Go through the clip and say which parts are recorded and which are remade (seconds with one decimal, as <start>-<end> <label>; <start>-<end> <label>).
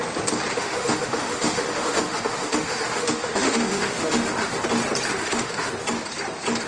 0.0-0.5 recorded; 0.5-4.5 remade; 4.5-5.2 recorded; 5.2-5.7 remade; 5.7-6.7 recorded